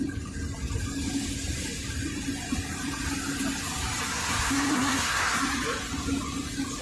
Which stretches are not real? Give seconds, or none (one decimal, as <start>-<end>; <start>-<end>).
4.1-5.4